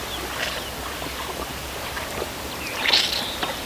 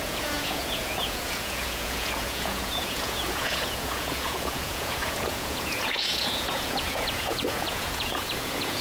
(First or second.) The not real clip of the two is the second